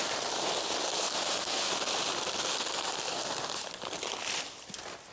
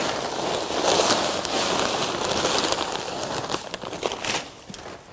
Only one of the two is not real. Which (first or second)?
first